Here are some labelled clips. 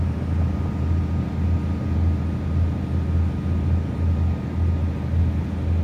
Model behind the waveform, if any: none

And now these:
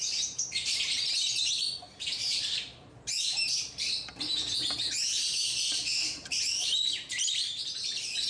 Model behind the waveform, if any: vocoder, BigVGAN v2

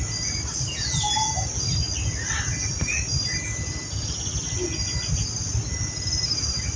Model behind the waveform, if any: none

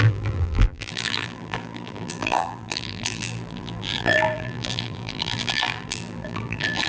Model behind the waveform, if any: vocoder, BigVGAN v2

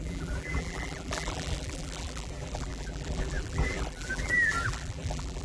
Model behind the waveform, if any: vocoder, BigVGAN v2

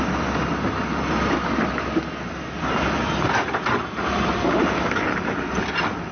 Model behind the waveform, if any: none